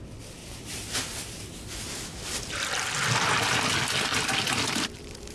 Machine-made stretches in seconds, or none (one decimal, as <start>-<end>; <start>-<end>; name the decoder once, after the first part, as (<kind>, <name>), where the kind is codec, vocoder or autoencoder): 0.4-3.6 (vocoder, BigVGAN v2); 4.1-5.3